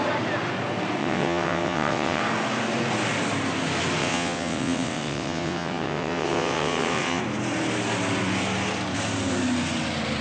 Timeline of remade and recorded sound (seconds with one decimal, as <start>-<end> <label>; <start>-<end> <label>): 0.0-1.0 recorded; 1.0-2.2 remade; 2.2-4.0 recorded; 4.0-7.2 remade; 7.2-10.2 recorded